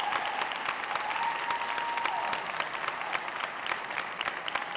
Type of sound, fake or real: real